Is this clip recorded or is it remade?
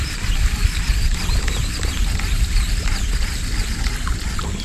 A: recorded